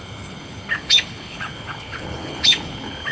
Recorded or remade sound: remade